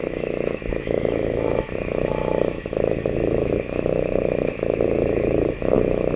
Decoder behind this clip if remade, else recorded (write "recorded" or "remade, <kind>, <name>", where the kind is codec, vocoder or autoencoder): remade, autoencoder, DAC-VAE